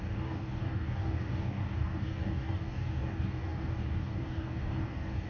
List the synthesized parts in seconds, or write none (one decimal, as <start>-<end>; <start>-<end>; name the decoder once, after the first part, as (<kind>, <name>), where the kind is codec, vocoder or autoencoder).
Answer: 0.0-5.3 (codec, DAC)